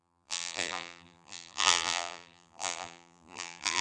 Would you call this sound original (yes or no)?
no